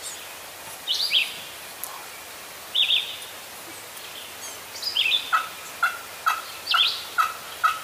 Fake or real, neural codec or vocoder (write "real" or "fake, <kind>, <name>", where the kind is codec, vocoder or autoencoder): real